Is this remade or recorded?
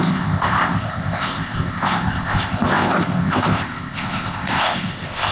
remade